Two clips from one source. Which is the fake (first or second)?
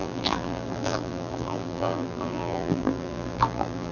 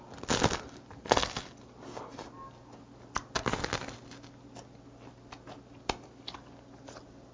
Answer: first